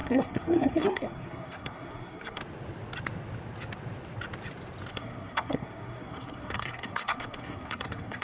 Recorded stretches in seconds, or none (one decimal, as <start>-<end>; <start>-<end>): 2.4-4.9